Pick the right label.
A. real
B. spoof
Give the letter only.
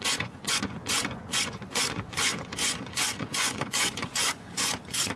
B